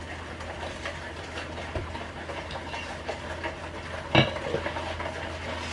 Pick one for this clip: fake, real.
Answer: real